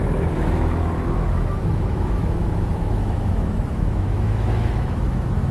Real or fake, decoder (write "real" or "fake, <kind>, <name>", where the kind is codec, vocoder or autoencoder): fake, autoencoder, DAC-VAE